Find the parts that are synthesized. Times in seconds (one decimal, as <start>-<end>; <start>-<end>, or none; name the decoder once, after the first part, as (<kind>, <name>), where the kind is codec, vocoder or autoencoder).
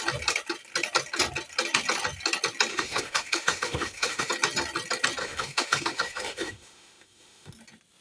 2.7-4.3 (autoencoder, DAC-VAE); 5.2-7.5